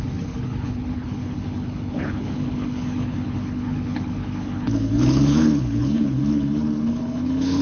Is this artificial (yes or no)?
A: yes